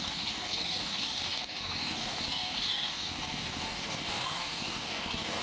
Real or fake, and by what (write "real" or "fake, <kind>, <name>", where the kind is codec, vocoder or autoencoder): fake, codec, DAC